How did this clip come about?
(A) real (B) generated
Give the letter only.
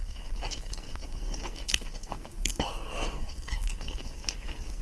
B